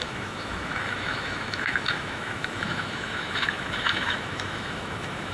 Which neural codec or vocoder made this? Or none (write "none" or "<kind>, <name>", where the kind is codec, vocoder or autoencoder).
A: autoencoder, DAC-VAE